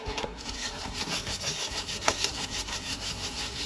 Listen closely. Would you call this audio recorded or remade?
remade